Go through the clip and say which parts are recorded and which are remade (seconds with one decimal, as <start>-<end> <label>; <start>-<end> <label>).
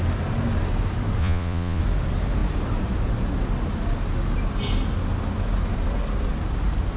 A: 0.0-1.2 recorded; 1.2-1.8 remade; 1.8-7.0 recorded